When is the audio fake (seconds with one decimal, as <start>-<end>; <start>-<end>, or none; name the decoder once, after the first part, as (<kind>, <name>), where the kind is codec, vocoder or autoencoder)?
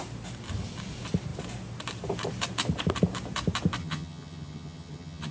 3.8-5.3 (vocoder, HiFi-GAN)